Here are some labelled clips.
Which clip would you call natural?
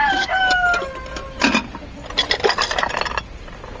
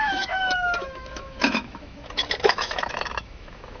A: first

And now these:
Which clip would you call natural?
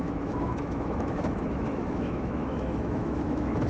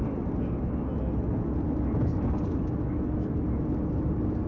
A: second